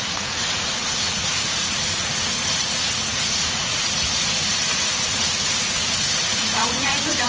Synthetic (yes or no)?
yes